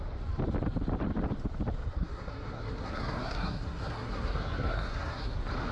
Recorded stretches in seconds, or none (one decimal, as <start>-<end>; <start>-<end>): 0.0-1.9; 5.3-5.7